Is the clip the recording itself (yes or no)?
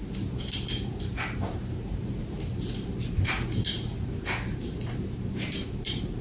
no